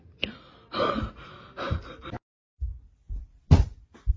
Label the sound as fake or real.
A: real